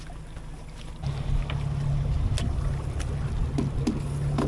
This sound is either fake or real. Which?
real